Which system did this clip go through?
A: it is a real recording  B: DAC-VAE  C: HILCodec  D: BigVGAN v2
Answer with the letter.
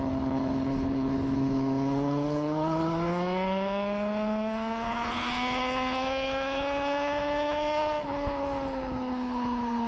C